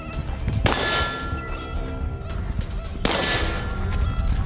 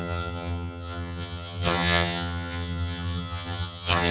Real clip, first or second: first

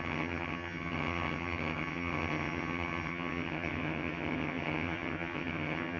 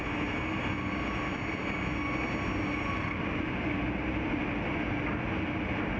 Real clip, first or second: second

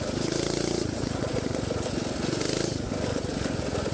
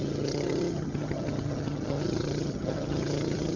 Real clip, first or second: first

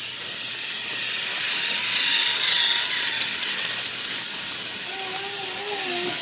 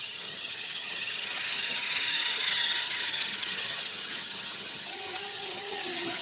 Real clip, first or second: first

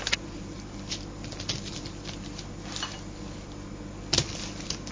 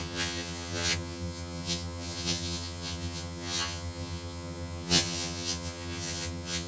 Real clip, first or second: first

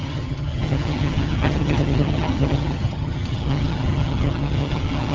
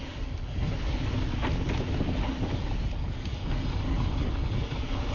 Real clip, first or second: second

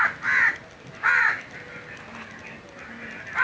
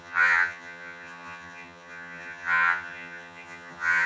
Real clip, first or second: first